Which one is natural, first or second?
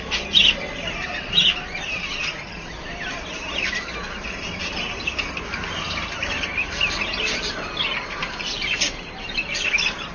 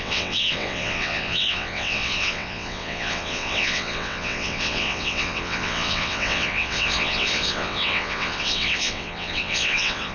first